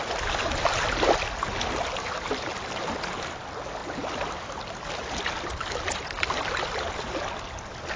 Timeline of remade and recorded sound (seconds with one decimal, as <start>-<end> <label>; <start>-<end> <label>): 0.0-8.0 recorded